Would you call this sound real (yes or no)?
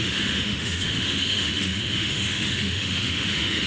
no